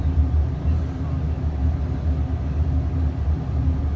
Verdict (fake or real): real